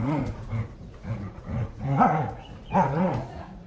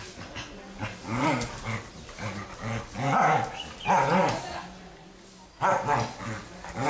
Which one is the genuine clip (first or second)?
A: second